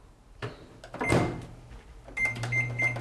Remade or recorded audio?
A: recorded